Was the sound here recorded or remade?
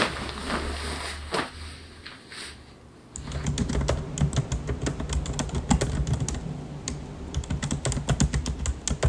recorded